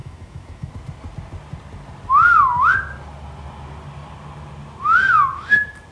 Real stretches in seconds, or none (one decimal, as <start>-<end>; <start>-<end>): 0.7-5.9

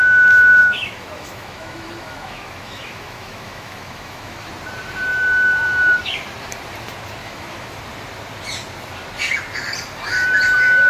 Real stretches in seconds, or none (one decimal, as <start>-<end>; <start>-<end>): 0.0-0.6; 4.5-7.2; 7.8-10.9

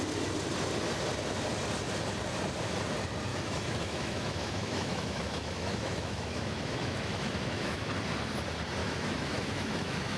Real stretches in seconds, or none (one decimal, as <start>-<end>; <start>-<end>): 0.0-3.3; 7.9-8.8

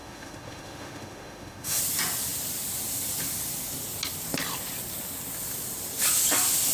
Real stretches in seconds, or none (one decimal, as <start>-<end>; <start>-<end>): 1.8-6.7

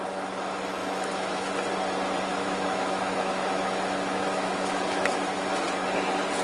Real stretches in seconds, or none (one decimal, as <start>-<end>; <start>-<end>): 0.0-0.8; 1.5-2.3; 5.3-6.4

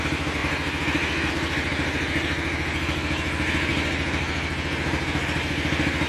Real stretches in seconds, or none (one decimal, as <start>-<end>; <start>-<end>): 0.0-6.1